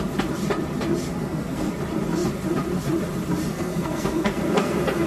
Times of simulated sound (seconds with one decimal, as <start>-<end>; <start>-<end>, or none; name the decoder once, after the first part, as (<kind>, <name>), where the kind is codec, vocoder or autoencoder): 1.2-1.7 (codec, SNAC); 3.5-5.1